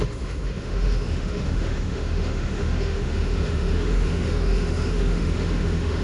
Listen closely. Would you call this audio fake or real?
fake